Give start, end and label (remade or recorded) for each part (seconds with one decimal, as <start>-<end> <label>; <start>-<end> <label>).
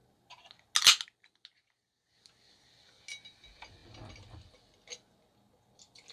0.0-6.1 recorded